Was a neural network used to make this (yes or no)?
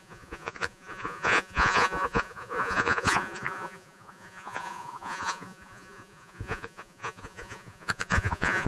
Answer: yes